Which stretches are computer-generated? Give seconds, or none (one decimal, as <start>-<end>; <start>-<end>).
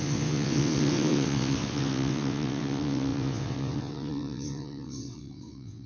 0.0-5.9